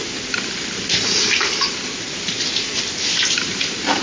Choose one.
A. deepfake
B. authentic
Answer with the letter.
B